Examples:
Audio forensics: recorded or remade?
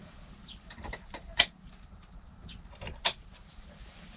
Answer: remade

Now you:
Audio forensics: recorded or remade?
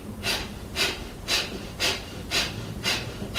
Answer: recorded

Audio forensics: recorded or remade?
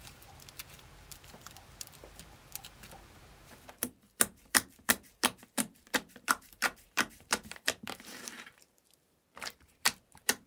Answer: remade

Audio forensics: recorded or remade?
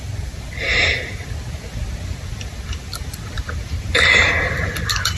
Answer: remade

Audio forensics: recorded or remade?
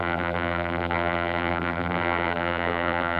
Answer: remade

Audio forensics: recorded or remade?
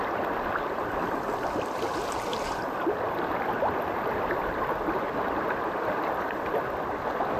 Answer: recorded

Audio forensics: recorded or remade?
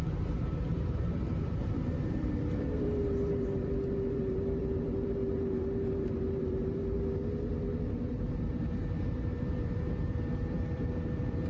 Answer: remade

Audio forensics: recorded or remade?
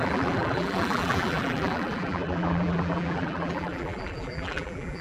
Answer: remade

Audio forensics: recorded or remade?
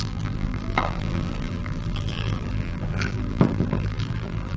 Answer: remade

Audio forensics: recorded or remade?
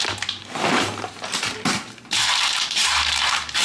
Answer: remade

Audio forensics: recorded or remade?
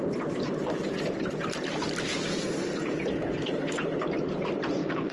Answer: remade